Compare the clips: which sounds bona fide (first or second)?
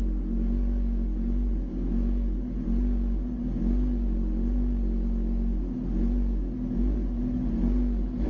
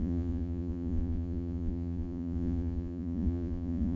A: first